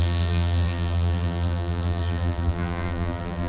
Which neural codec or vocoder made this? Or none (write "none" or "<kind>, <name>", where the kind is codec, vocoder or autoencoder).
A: vocoder, BigVGAN v2